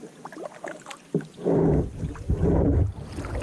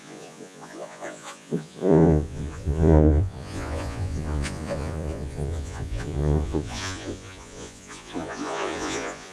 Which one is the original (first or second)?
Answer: first